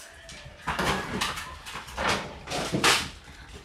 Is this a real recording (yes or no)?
yes